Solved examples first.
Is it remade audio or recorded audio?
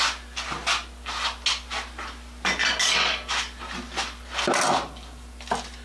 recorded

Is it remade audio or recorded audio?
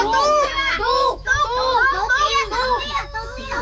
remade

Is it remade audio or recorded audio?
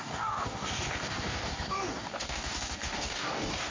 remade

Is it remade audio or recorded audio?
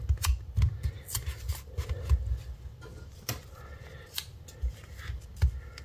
recorded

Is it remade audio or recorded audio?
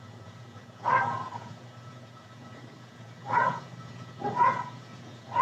remade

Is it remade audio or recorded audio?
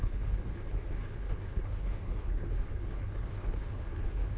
remade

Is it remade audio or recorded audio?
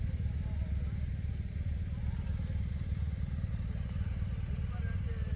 recorded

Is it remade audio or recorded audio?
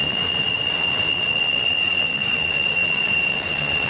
remade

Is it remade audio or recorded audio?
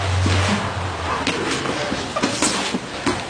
recorded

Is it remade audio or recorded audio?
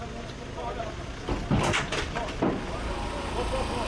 recorded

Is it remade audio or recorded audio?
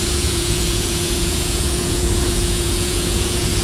remade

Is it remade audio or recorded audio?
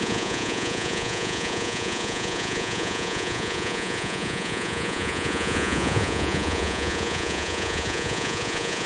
remade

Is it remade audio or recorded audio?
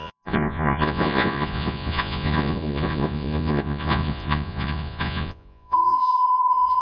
remade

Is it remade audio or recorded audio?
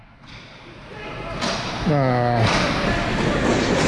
recorded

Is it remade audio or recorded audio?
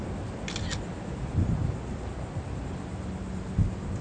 recorded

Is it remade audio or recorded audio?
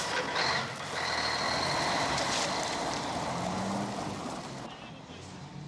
recorded